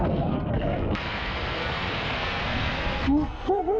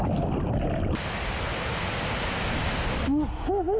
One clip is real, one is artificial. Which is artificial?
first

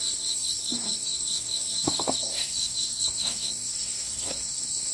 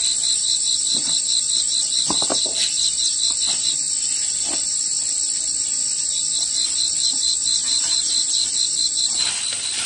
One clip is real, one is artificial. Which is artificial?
first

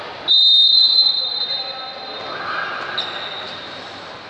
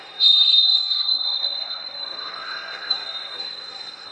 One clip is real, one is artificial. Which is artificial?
second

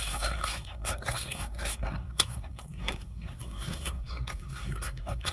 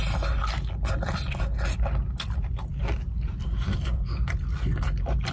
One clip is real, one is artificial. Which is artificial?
first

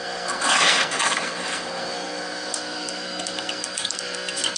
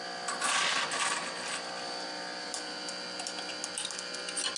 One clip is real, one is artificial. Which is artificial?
first